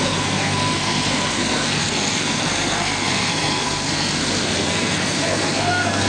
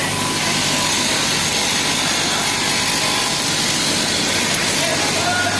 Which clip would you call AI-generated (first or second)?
first